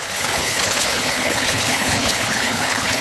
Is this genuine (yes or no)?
no